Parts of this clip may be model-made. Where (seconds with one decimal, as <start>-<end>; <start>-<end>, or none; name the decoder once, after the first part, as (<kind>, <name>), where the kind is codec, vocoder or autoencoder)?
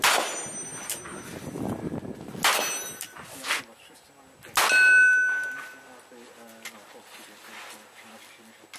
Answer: none